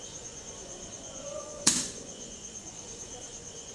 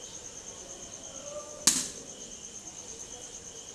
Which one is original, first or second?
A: second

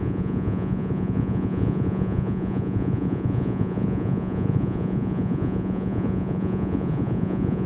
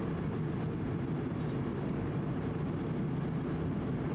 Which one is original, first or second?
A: second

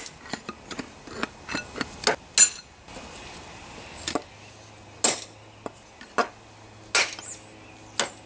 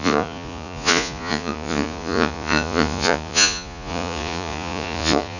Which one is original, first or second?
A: first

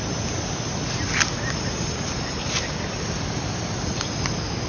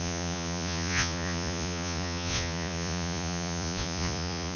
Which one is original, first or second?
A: first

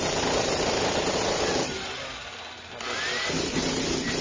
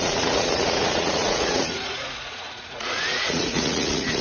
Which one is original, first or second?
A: first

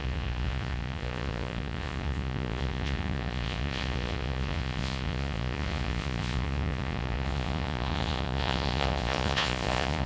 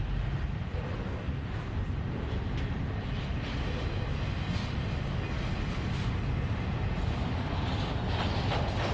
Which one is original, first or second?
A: second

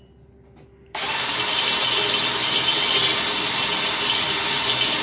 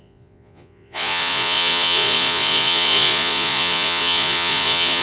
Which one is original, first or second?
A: first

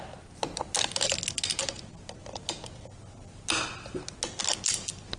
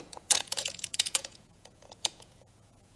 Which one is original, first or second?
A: first